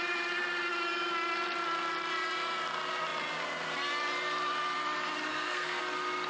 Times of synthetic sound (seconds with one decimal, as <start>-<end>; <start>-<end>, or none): 5.3-5.8